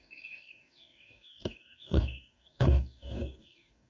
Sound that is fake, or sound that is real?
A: fake